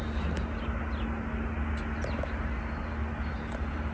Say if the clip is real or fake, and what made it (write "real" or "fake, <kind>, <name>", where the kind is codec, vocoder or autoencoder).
real